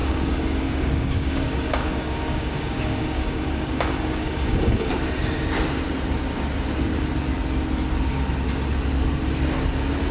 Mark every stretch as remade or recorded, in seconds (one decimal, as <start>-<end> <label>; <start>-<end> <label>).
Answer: 0.0-4.9 remade; 4.9-10.1 recorded